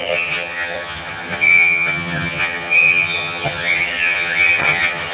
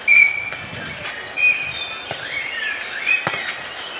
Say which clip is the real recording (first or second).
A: second